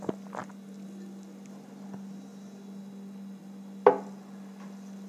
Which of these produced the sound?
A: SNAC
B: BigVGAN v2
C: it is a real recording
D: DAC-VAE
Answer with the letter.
C